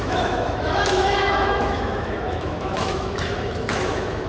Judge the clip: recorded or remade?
remade